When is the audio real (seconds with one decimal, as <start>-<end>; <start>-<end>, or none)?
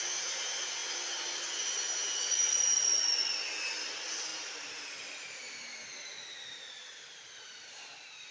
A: 0.0-4.3; 7.3-8.3